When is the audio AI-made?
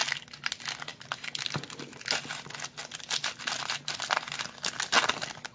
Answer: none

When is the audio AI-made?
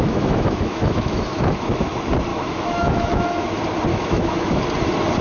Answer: 0.0-1.9 (autoencoder, DAC-VAE); 2.3-3.5; 3.9-4.6